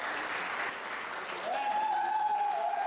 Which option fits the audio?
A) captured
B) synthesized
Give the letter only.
A